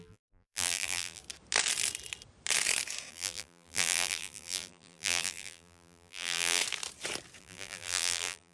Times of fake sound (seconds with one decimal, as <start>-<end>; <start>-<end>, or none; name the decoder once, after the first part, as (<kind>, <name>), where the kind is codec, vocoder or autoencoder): 0.0-1.2 (vocoder, BigVGAN v2); 3.1-6.6; 7.4-8.5

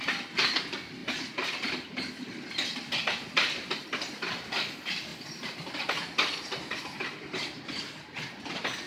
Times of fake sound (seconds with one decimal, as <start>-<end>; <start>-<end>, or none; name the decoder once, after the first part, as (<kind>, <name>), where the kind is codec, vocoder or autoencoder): 5.1-5.7 (vocoder, BigVGAN v2)

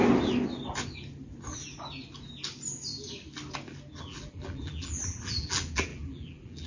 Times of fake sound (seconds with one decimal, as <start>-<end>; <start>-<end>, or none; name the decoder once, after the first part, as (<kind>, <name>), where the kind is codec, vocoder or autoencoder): 4.0-6.7 (vocoder, BigVGAN v2)

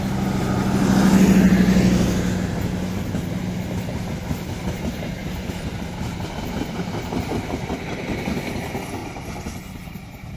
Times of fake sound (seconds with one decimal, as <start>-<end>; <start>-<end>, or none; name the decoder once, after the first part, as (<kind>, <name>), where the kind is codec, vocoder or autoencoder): 5.2-6.2 (vocoder, BigVGAN v2); 9.0-10.4